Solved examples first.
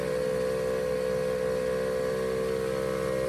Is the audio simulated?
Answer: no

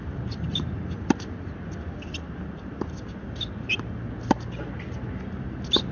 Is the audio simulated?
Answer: no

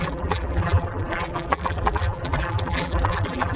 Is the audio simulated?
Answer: yes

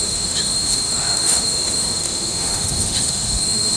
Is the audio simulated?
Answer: yes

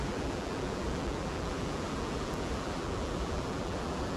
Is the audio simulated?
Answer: yes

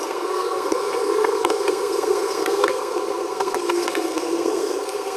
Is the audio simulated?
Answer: yes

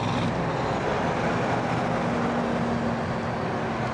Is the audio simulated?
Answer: no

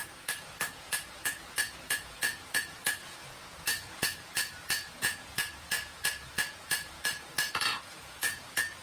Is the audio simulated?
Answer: yes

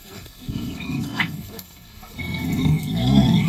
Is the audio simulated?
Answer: yes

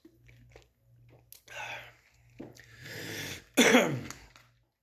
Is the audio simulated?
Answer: no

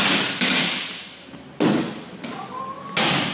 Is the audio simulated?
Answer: no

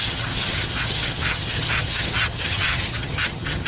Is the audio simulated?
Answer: yes